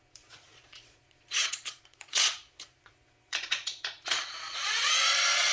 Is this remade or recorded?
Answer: remade